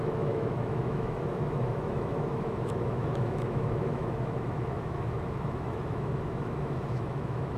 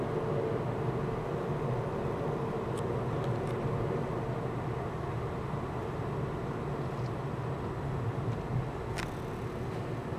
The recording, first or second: second